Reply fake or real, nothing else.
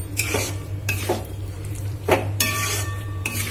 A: fake